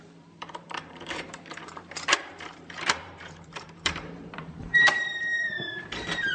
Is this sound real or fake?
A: fake